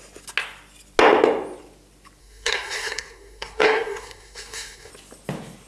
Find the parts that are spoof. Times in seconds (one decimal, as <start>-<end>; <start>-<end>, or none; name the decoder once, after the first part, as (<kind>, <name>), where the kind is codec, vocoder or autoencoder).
2.2-4.9 (codec, SNAC)